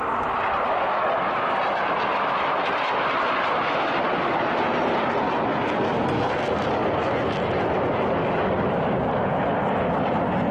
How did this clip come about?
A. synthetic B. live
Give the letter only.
B